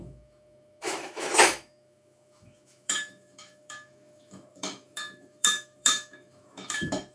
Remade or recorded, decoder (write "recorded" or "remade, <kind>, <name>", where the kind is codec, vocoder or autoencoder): remade, autoencoder, DAC-VAE